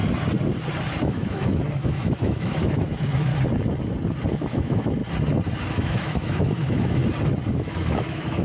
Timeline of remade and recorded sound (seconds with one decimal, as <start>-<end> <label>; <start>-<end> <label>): 0.0-1.0 recorded; 1.0-3.3 remade; 3.3-4.3 recorded; 4.3-5.0 remade; 5.0-5.7 recorded; 5.7-7.0 remade; 7.0-7.5 recorded; 7.5-8.4 remade